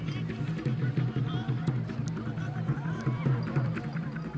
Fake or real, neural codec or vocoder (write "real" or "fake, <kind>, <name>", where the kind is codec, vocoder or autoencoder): real